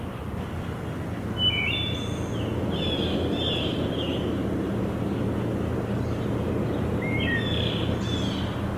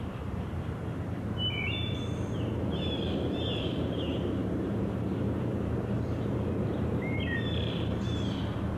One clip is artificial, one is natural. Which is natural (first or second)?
first